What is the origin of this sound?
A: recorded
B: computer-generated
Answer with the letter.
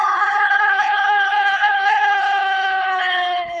B